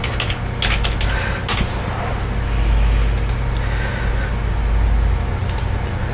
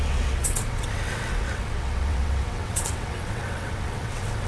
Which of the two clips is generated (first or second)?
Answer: second